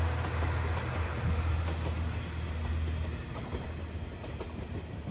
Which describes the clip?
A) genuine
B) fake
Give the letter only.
A